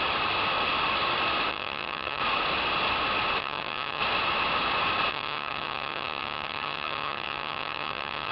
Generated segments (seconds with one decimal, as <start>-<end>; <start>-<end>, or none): 1.5-2.2; 3.4-4.0; 5.1-8.3